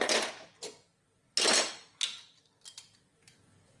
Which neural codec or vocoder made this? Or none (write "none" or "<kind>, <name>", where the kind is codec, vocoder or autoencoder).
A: none